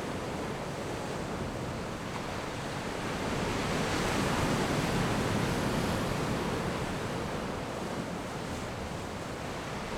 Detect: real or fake real